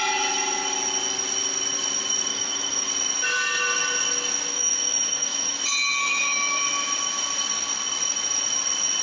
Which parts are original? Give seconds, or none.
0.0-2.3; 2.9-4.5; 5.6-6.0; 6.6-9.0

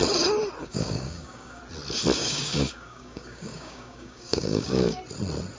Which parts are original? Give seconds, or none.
0.0-0.6; 1.6-2.2; 5.0-5.6

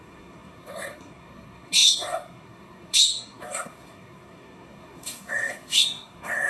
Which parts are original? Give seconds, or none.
none

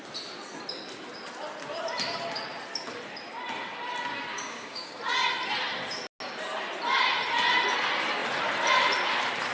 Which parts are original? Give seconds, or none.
0.0-4.3; 5.0-9.5

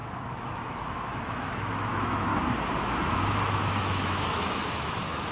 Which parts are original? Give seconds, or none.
2.3-2.8

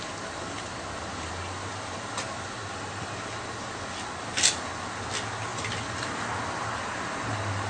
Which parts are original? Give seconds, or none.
0.0-7.7